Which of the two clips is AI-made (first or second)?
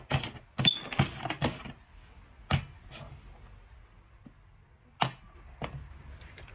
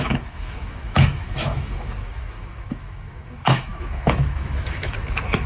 second